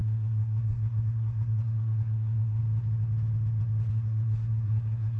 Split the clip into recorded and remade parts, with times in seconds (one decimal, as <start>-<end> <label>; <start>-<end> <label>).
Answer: 0.0-2.6 remade; 2.6-3.9 recorded; 3.9-5.2 remade